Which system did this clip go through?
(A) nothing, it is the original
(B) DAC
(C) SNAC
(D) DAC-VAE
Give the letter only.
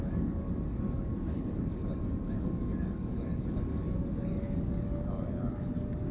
B